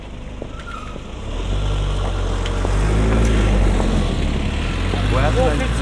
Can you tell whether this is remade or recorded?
recorded